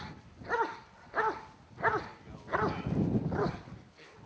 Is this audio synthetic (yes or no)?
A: no